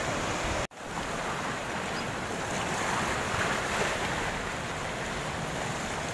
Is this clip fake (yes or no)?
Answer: no